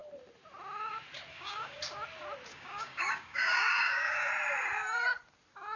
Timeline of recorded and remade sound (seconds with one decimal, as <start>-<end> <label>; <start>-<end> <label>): 0.0-1.3 recorded; 1.3-1.8 remade; 1.8-2.5 recorded; 2.5-4.3 remade; 4.3-5.8 recorded

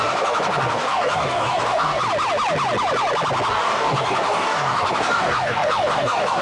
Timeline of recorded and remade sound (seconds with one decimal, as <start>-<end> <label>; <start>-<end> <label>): 0.0-2.0 remade; 2.0-3.5 recorded; 3.5-6.4 remade